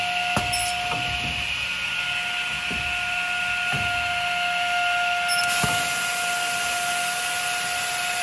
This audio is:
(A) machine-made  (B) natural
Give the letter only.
B